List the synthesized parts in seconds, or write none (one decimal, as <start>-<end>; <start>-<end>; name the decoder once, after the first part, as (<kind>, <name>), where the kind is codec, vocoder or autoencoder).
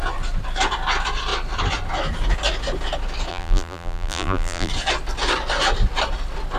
3.3-4.7 (vocoder, BigVGAN v2)